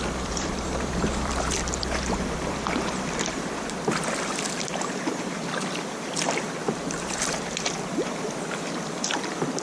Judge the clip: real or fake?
fake